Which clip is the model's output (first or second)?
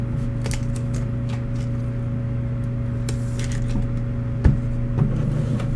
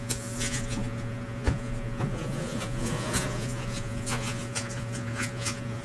second